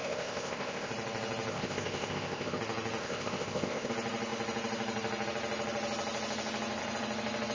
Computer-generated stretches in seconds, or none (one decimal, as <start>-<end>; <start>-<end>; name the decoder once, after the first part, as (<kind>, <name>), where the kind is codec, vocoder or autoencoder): 0.0-0.9 (codec, ZipCodec); 1.5-2.6; 3.0-3.9